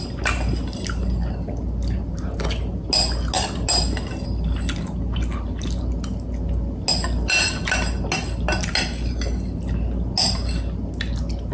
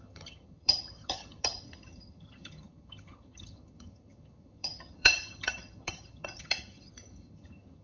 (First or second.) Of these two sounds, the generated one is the second